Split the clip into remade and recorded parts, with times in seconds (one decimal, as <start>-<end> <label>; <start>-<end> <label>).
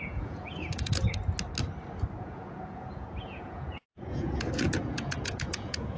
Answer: 0.0-1.2 remade; 1.2-2.2 recorded; 2.2-6.0 remade